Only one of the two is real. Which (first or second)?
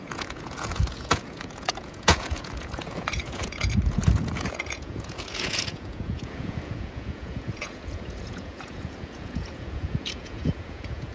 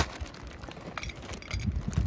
second